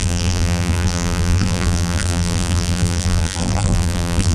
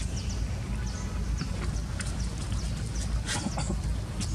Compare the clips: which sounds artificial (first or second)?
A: first